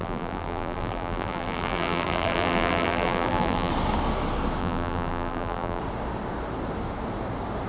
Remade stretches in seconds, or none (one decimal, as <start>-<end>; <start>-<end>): 0.0-3.7; 4.6-5.8

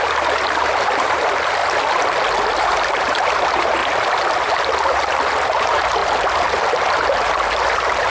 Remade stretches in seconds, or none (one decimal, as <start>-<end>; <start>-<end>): 0.0-1.6; 2.6-3.8; 4.4-6.0; 6.7-8.1